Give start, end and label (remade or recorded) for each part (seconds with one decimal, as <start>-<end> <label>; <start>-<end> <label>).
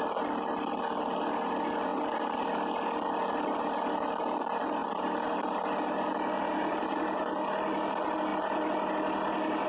0.0-9.7 recorded